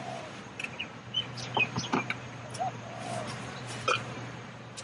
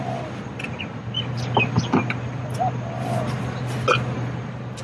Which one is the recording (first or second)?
second